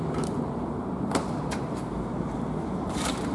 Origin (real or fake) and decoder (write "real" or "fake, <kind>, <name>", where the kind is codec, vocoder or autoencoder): fake, vocoder, BigVGAN v2